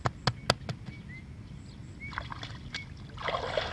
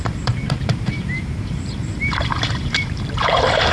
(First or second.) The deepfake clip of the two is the second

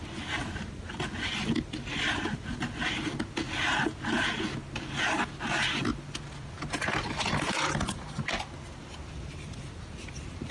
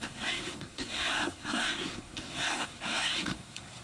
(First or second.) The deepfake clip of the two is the second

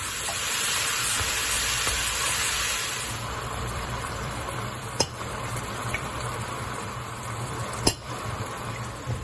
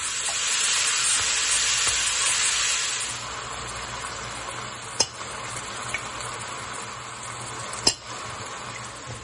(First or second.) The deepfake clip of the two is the first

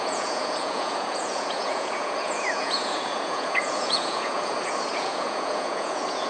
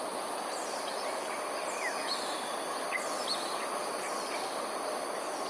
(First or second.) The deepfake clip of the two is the first